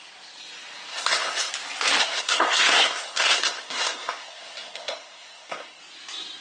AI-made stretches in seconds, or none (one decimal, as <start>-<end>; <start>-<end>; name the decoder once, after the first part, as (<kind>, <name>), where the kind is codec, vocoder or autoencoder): 0.9-1.5 (codec, SNAC); 2.0-5.8